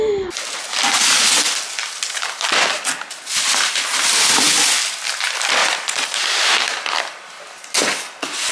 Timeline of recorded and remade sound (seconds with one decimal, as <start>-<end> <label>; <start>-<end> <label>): 0.0-8.5 recorded